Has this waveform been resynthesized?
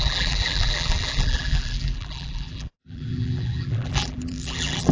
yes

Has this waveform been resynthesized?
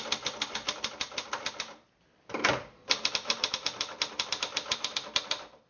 yes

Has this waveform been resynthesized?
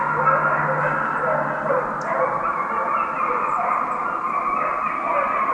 no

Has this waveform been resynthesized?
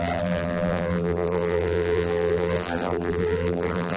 yes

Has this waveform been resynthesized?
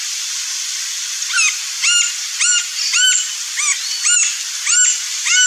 no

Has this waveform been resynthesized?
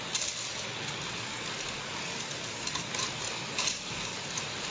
no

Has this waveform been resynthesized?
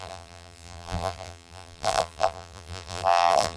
yes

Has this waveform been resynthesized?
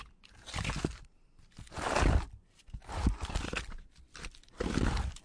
no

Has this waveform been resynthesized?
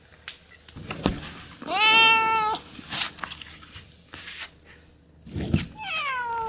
no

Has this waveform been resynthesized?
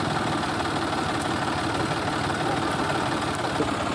yes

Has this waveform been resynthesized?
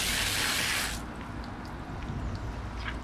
no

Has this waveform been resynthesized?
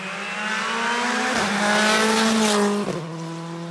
no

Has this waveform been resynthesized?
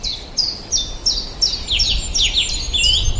no